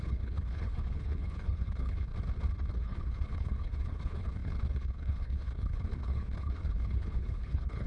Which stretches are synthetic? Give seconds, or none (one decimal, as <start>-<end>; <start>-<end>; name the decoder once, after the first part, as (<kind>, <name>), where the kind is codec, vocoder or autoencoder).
0.0-2.1 (codec, HILCodec); 2.7-7.9